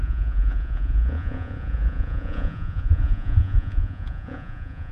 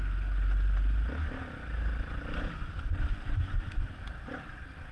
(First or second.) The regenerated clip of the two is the first